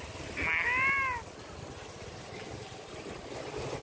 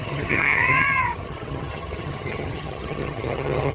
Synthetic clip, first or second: second